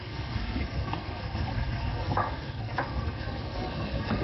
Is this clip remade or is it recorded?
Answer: remade